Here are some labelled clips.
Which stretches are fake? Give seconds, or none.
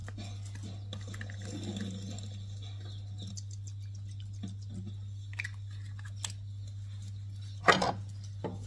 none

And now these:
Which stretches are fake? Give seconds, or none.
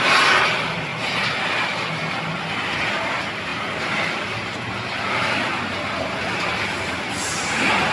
none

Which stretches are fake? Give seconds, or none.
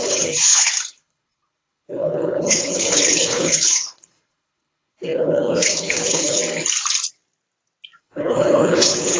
0.0-6.4; 8.0-9.2